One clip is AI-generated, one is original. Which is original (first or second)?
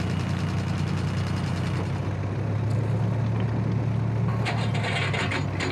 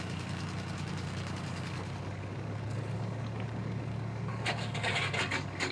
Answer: first